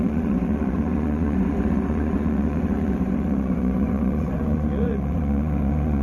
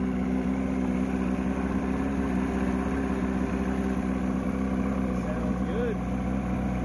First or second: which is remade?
first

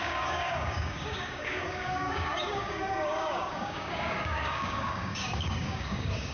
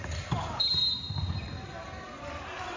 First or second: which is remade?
first